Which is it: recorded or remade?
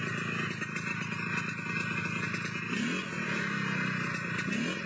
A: recorded